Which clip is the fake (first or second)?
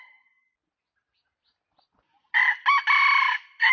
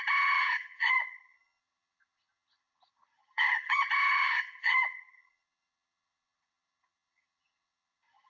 second